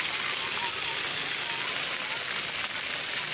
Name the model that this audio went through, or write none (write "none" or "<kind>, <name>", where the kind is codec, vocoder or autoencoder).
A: none